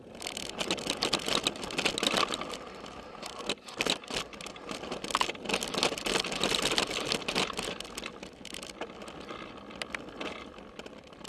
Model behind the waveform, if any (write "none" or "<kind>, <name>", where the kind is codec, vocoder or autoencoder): none